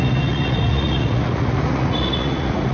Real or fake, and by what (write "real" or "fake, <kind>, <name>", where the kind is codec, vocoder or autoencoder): fake, vocoder, Vocos